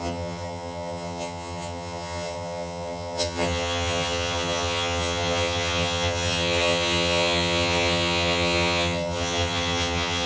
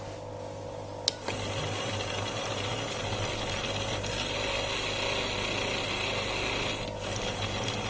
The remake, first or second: first